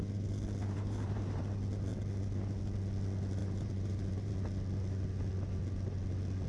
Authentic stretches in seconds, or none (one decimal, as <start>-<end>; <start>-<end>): 0.0-0.6; 1.4-3.4; 4.3-6.5